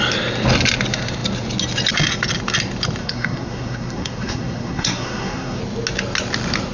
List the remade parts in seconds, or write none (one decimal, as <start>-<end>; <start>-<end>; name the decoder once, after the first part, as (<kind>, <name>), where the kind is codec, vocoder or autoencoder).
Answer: 3.0-5.6 (codec, SNAC)